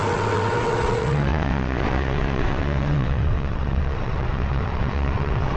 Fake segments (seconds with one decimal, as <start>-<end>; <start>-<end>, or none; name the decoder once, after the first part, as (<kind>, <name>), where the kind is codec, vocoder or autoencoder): 0.0-5.6 (vocoder, WaveNeXt)